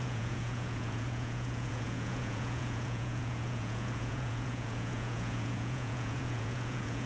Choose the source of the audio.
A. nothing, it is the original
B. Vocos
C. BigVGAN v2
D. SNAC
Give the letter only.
B